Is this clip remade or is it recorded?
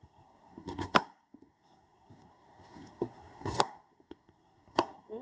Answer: remade